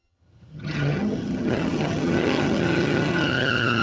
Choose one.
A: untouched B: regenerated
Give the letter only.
B